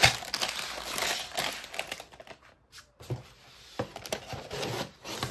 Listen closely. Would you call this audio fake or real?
real